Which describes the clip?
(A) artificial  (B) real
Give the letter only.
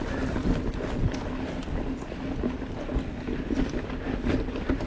B